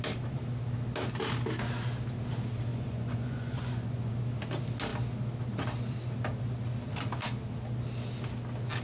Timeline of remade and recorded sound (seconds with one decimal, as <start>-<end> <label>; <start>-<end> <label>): 0.0-2.7 recorded; 2.7-4.1 remade; 4.1-8.8 recorded